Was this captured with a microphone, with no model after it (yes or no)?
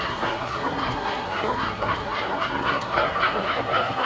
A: no